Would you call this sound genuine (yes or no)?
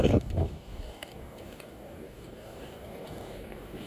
no